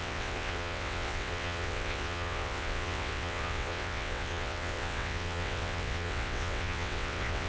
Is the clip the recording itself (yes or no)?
no